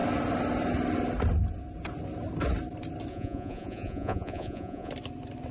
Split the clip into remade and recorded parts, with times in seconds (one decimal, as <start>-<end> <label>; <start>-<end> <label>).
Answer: 0.0-3.1 recorded; 3.1-4.9 remade; 4.9-5.5 recorded